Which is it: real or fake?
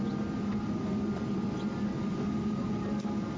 real